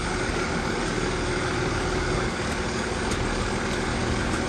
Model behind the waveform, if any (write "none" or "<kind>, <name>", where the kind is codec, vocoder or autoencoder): codec, DAC